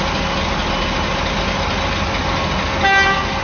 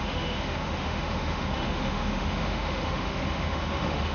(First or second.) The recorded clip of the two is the first